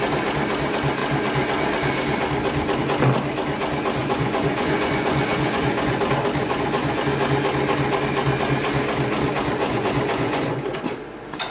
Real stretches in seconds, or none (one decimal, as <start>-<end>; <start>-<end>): 0.0-4.0; 6.0-6.4; 7.0-9.6; 10.9-11.5